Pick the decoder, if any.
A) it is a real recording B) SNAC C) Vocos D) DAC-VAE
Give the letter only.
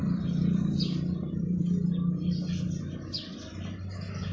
A